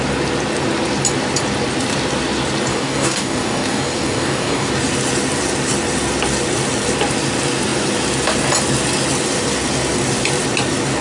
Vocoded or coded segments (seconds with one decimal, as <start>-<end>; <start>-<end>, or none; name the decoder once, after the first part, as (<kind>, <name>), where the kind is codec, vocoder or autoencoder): 2.7-4.7 (codec, DAC)